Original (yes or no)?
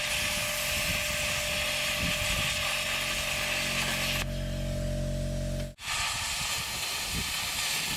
yes